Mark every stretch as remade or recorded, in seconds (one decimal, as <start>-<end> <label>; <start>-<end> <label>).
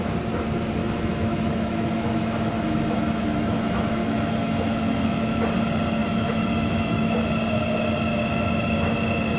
0.0-0.8 recorded; 0.8-5.4 remade; 5.4-6.0 recorded; 6.0-7.2 remade; 7.2-9.4 recorded